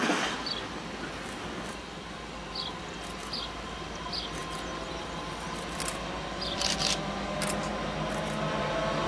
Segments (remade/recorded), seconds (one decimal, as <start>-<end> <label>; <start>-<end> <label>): 0.0-9.1 recorded

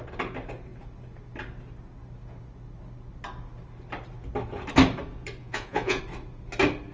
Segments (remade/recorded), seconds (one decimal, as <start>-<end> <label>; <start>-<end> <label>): 0.0-5.4 recorded; 5.4-6.0 remade; 6.0-6.9 recorded

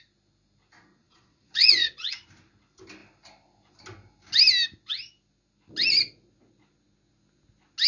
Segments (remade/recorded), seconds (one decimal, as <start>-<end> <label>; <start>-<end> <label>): 0.0-1.0 recorded; 1.0-2.1 remade; 2.1-7.9 recorded